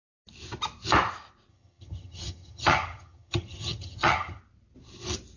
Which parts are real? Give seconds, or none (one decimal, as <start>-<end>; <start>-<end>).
0.0-1.5; 4.4-5.4